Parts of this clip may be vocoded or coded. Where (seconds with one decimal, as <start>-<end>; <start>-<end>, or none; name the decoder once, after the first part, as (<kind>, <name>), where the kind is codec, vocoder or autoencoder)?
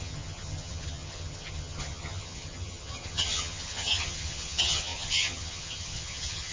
0.0-6.5 (vocoder, HiFi-GAN)